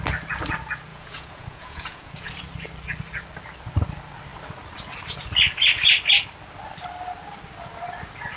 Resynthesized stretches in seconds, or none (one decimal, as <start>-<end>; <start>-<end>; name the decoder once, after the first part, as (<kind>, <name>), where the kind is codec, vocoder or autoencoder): 0.9-2.3 (vocoder, Vocos)